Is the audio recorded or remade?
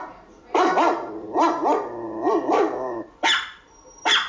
recorded